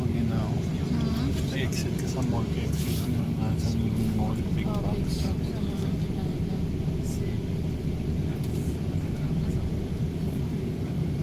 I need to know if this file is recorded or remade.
recorded